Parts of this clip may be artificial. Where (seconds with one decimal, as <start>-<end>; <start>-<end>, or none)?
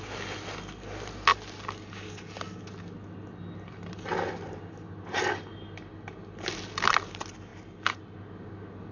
none